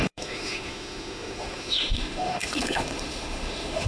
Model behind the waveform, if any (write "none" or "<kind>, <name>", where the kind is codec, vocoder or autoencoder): autoencoder, DAC-VAE